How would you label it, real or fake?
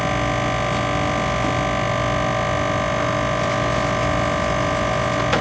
real